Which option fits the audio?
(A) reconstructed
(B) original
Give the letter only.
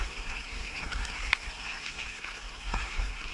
A